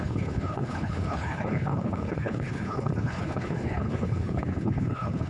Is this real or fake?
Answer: fake